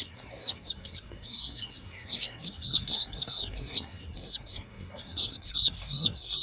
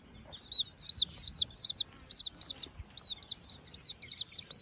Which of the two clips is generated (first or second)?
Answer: first